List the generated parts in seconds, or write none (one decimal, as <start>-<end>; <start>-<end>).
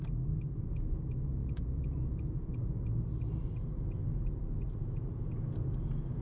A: 1.4-2.6